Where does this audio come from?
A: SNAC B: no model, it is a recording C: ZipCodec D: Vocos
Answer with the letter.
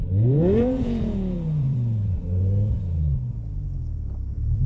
D